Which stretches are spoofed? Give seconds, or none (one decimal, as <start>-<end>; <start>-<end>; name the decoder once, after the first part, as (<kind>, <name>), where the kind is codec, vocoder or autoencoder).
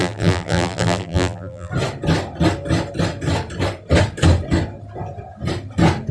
0.0-1.7 (vocoder, BigVGAN v2)